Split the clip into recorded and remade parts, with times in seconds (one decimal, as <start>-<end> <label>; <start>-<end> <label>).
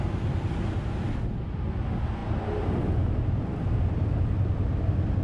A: 0.0-5.2 recorded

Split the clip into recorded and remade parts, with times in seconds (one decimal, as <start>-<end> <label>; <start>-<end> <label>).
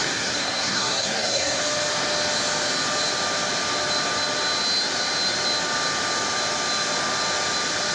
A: 0.0-1.6 remade; 1.6-7.9 recorded